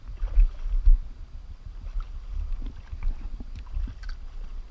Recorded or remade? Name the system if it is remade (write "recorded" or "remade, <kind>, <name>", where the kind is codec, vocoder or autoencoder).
recorded